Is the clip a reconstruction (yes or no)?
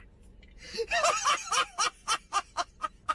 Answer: no